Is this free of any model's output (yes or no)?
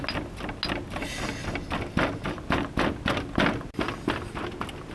yes